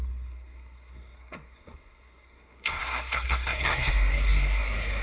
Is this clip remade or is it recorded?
remade